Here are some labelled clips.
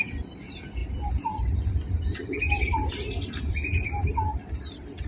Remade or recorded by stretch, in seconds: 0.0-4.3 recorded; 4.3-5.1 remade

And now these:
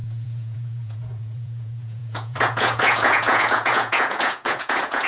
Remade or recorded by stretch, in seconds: 0.0-5.1 remade

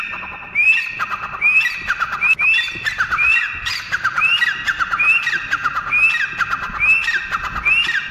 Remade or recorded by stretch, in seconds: 0.0-5.6 remade; 5.6-8.1 recorded

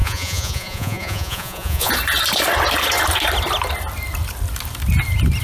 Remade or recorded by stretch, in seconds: 0.0-1.9 remade; 1.9-5.4 recorded